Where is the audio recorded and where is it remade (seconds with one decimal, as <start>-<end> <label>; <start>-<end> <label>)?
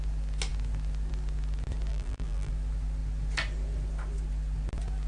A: 0.0-1.9 recorded; 1.9-2.5 remade; 2.5-5.1 recorded